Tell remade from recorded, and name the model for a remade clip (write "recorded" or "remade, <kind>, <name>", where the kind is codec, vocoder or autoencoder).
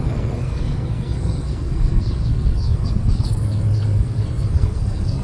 remade, codec, SNAC